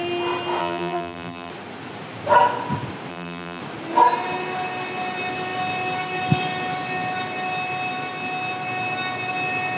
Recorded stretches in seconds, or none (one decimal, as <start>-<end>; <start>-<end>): 0.0-0.6; 1.5-3.1; 3.6-9.8